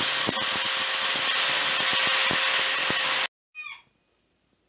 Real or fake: real